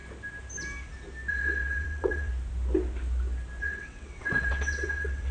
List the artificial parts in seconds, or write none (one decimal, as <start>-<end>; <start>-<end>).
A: 1.3-2.3; 3.6-5.3